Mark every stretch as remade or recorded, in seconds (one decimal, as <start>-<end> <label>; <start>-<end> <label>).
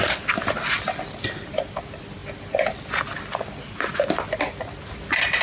0.0-5.4 recorded